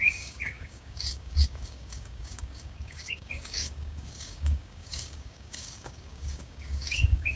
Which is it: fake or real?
fake